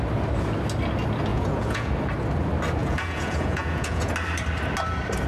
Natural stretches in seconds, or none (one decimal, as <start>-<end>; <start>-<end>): 0.0-1.3; 1.9-2.8; 4.1-5.3